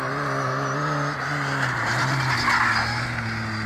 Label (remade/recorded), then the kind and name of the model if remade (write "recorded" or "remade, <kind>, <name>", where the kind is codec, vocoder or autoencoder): recorded